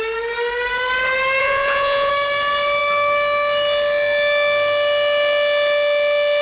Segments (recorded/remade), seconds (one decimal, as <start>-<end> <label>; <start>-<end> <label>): 0.0-1.4 recorded; 1.4-2.1 remade; 2.1-6.4 recorded